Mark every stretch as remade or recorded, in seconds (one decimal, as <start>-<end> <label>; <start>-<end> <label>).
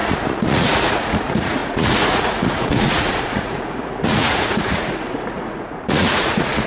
0.0-6.7 remade